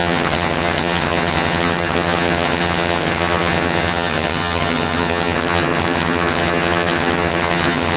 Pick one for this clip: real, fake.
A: fake